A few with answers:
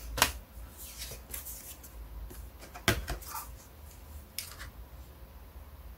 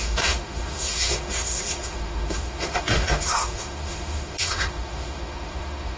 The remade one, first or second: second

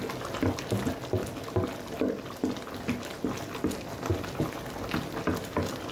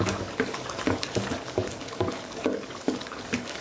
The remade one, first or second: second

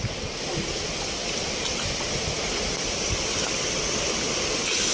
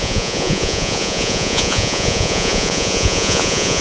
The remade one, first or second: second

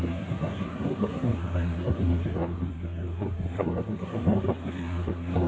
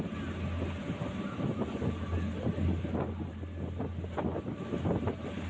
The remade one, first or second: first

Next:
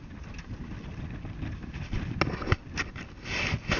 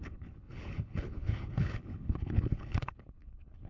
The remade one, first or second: second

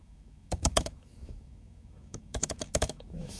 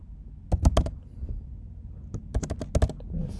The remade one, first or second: first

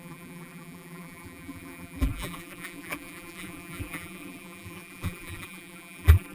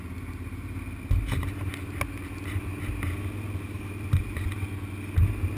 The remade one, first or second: first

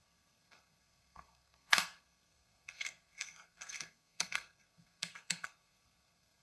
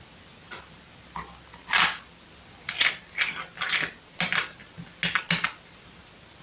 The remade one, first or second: first